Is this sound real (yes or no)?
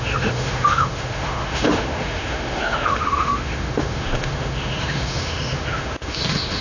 no